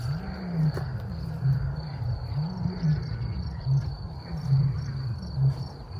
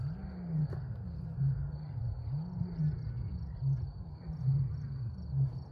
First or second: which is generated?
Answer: first